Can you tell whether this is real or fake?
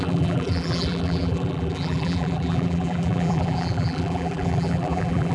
fake